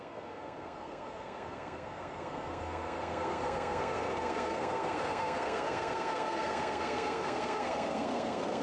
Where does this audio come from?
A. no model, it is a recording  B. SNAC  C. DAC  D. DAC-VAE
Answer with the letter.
B